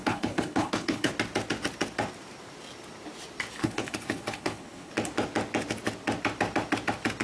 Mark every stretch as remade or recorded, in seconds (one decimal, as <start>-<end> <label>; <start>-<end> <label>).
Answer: 0.0-1.1 remade; 1.1-3.6 recorded; 3.6-4.9 remade; 4.9-7.2 recorded